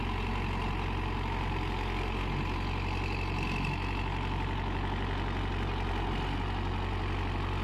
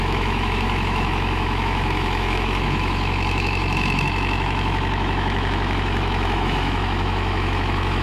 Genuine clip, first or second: first